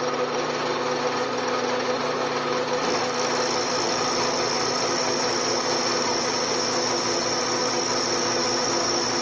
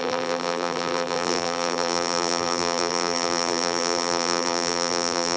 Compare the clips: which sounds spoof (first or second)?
second